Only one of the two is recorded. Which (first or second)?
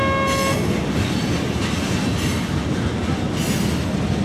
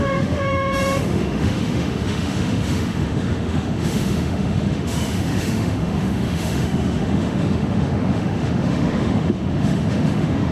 first